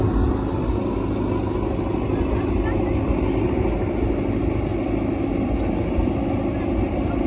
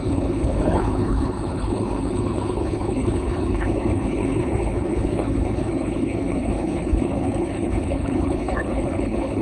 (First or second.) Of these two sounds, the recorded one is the first